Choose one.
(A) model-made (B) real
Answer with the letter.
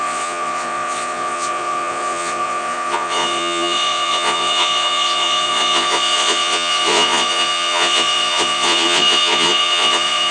A